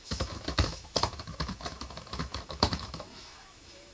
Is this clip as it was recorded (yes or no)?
no